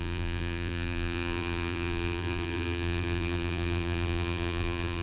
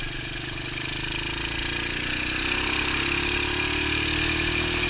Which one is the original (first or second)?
second